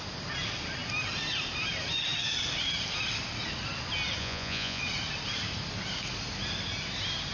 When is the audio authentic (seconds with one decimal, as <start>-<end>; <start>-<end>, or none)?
0.0-4.2; 4.8-7.3